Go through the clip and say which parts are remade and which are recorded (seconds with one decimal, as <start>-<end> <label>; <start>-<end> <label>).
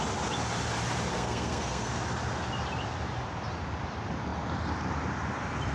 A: 0.0-1.1 recorded; 1.1-1.9 remade; 1.9-5.7 recorded